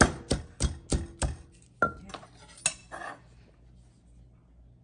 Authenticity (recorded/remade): recorded